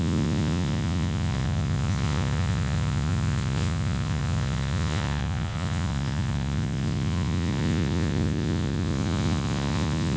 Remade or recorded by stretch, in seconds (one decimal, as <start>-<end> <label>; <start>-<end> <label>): 0.0-10.2 remade